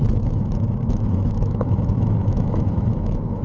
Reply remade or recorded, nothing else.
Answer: remade